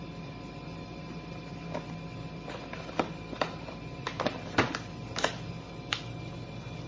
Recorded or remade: recorded